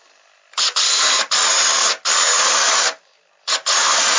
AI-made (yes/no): no